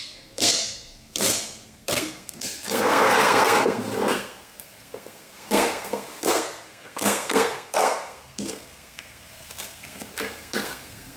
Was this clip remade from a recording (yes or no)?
yes